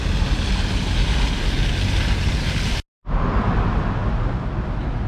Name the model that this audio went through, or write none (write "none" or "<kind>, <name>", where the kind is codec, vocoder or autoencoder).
none